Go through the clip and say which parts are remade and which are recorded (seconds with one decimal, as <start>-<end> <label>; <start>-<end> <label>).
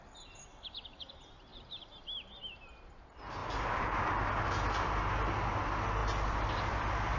0.0-1.5 recorded; 1.5-3.0 remade; 3.0-7.2 recorded